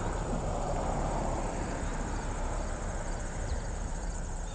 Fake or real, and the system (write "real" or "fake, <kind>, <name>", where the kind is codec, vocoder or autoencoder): fake, vocoder, BigVGAN v2